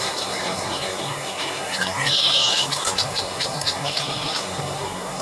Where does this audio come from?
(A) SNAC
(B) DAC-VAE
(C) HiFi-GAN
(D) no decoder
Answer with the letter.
A